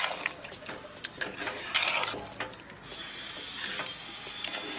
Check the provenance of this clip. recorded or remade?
recorded